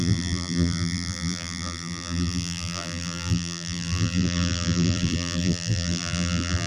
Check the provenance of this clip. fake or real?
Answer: fake